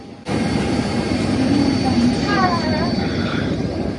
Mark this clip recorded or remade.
remade